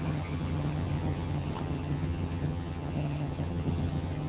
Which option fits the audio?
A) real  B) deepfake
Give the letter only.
B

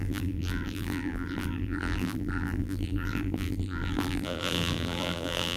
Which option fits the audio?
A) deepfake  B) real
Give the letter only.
A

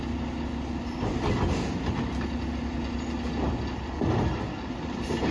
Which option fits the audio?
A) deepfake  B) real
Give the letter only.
B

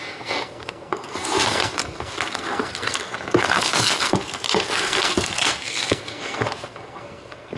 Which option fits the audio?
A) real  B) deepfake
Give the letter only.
B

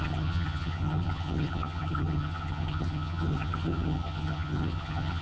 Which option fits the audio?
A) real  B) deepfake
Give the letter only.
B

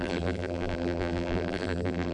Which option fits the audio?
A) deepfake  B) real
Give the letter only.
A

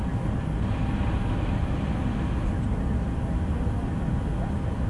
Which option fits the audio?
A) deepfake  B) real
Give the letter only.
B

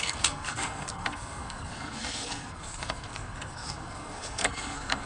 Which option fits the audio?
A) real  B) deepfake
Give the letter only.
B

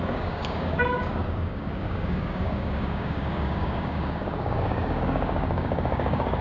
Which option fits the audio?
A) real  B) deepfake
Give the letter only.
B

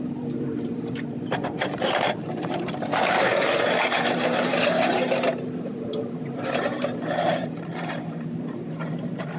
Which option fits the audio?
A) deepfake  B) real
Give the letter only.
A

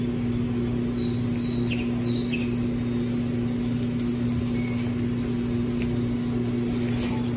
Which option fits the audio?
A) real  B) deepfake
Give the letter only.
A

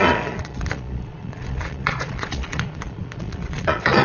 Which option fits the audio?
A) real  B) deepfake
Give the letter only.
B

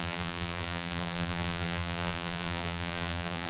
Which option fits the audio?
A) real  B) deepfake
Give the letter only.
B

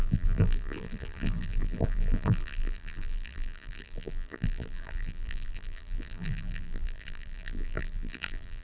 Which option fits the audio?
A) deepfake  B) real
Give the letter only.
A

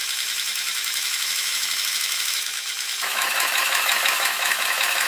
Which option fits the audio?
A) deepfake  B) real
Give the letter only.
A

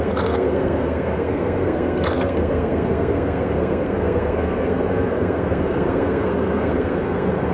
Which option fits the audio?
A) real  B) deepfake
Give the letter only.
B